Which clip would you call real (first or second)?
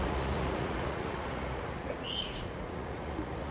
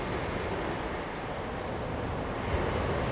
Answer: second